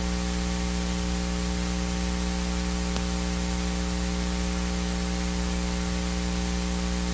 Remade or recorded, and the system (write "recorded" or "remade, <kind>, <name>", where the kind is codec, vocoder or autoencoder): recorded